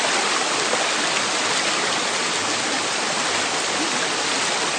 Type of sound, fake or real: real